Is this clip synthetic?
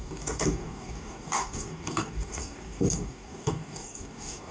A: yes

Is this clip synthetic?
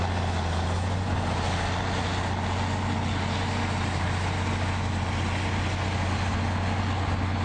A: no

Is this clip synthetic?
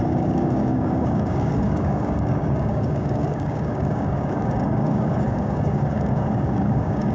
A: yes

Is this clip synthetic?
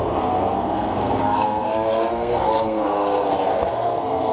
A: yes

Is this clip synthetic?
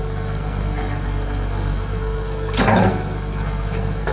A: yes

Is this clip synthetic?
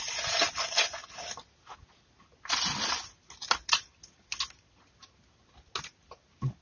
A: no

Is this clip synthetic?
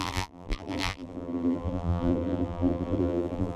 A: yes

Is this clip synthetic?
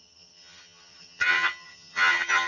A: yes